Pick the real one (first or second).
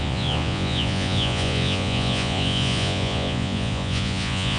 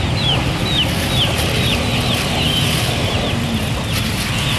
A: second